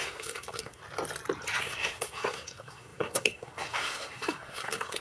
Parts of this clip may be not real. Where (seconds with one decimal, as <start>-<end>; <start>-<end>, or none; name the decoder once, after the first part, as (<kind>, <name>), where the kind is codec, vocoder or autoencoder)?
0.0-0.8 (codec, SNAC); 1.6-5.0